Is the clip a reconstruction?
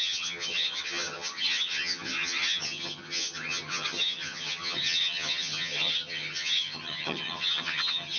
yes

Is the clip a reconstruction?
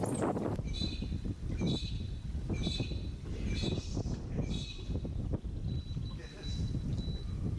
no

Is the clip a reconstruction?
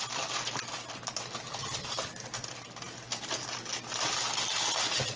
no